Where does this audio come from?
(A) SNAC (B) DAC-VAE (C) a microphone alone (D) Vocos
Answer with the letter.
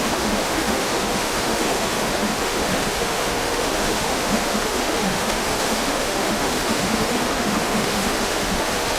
B